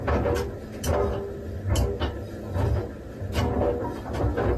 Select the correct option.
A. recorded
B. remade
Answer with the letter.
A